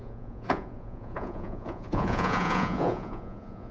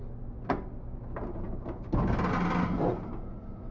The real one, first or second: second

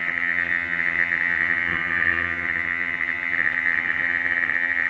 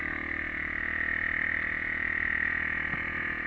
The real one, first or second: second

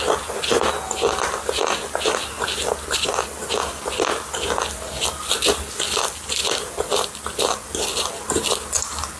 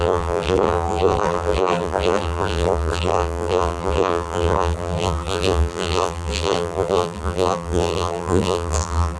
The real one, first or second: first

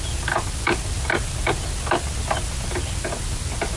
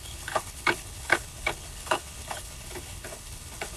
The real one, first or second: first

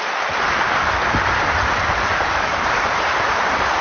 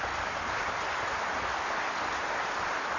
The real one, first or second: second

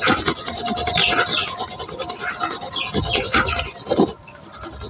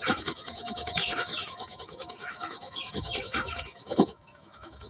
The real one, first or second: first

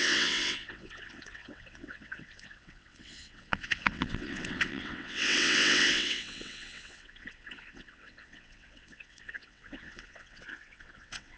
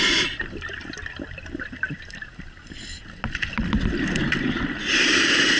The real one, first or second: second